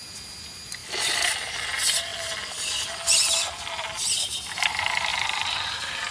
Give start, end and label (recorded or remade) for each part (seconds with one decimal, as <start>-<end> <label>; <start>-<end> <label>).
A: 0.0-0.8 recorded; 0.8-1.4 remade; 1.4-2.1 recorded; 2.1-4.3 remade; 4.3-5.1 recorded; 5.1-6.1 remade